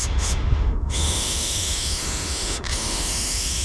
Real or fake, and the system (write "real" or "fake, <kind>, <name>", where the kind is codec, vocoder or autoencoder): fake, autoencoder, DAC-VAE